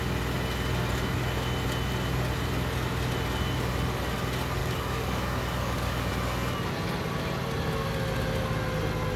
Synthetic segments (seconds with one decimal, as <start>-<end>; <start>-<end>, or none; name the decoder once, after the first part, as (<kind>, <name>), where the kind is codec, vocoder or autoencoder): 4.6-6.1 (codec, DAC)